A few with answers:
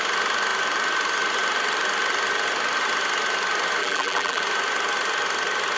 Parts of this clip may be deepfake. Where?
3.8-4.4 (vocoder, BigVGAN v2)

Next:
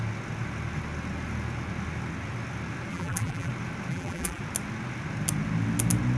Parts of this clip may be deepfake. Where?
2.9-3.5 (vocoder, BigVGAN v2); 3.9-4.4

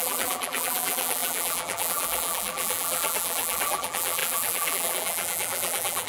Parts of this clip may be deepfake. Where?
0.0-6.1 (vocoder, BigVGAN v2)

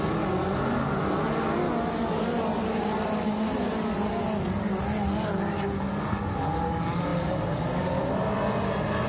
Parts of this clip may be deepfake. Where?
none